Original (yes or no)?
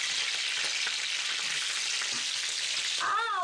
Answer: yes